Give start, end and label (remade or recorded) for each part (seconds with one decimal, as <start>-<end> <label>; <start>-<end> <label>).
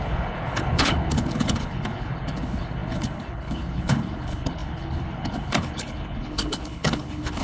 0.0-7.4 remade